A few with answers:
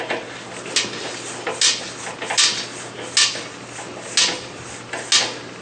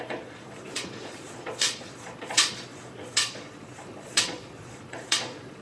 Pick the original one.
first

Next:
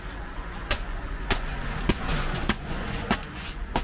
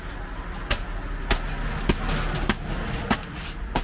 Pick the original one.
second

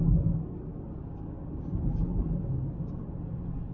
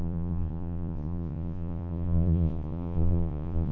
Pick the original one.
first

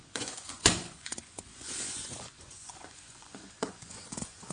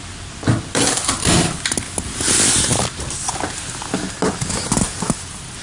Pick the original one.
second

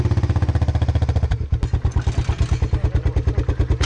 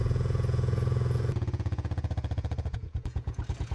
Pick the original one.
first